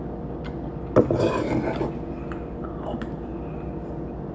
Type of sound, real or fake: real